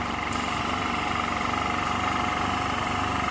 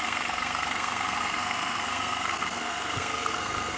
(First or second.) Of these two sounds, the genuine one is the first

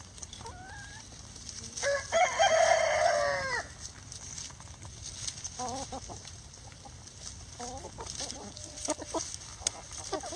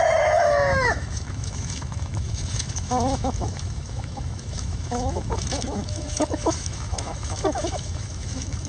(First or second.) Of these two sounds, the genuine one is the first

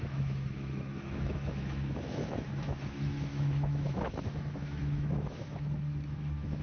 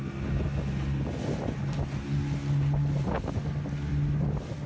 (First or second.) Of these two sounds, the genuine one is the second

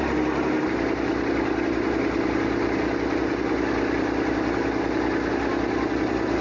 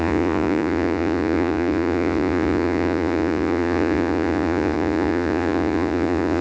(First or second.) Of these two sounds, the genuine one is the first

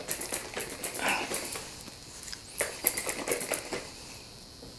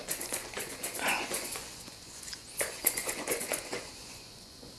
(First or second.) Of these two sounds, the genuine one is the first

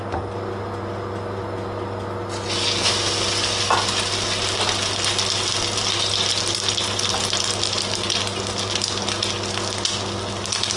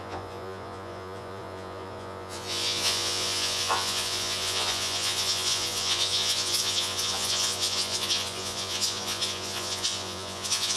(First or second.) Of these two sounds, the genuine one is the first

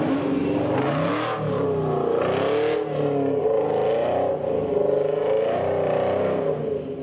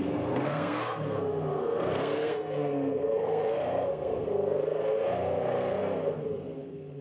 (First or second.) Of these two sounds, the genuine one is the first